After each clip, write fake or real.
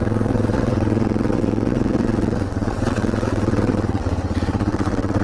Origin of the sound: fake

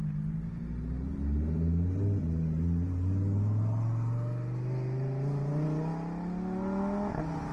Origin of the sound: real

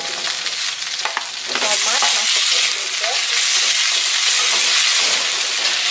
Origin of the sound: real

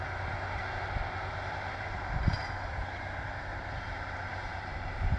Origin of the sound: real